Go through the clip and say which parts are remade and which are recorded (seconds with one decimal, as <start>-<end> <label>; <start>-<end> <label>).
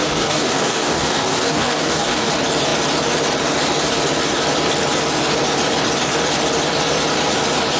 0.0-2.3 remade; 2.3-7.8 recorded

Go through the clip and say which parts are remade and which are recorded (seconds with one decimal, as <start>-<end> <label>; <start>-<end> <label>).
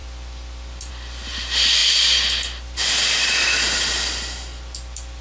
0.0-5.2 recorded